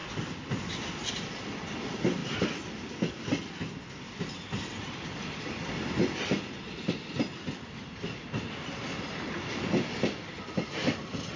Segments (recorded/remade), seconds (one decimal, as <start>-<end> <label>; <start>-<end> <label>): 0.0-11.4 recorded